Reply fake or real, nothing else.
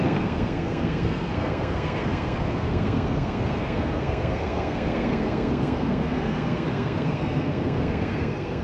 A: fake